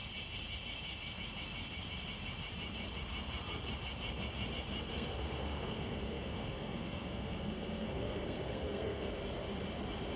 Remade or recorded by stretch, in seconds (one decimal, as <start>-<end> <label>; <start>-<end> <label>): 0.0-4.9 recorded; 4.9-9.1 remade; 9.1-10.2 recorded